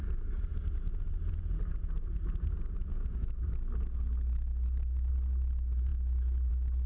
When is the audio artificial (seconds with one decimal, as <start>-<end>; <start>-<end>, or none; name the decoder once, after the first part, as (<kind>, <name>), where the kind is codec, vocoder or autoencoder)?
none